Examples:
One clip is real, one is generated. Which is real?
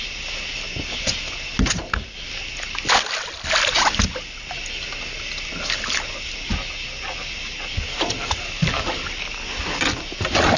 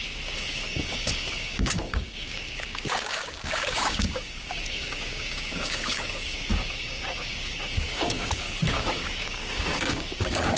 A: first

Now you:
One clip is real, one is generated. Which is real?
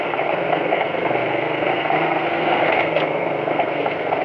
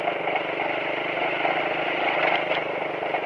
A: second